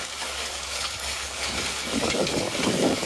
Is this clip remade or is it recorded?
remade